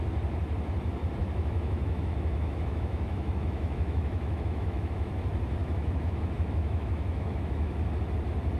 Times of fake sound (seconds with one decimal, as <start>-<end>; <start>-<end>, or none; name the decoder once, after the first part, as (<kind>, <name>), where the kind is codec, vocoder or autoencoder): 1.2-5.1 (autoencoder, DAC-VAE); 5.6-7.9